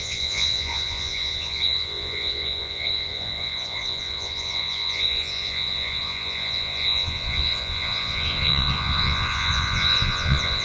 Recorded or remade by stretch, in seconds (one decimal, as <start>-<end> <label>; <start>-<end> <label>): 0.0-10.6 remade